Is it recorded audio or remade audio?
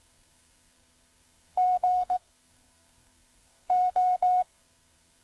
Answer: remade